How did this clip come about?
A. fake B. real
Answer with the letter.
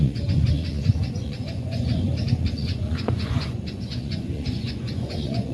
A